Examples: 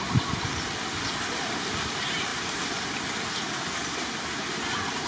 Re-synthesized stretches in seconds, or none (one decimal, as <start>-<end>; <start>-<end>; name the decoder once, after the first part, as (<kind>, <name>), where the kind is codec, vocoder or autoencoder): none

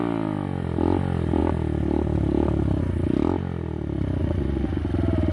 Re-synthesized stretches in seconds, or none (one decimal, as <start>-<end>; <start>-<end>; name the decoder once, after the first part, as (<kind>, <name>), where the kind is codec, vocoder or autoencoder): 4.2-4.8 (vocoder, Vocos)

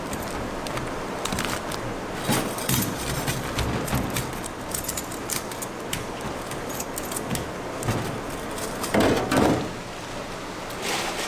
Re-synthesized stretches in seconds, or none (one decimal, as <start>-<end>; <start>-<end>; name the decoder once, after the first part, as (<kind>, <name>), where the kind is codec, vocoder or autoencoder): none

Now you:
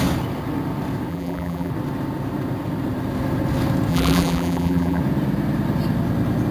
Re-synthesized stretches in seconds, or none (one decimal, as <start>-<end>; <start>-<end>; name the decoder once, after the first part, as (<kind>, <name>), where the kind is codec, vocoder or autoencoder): 1.1-1.7 (vocoder, BigVGAN v2); 3.9-5.0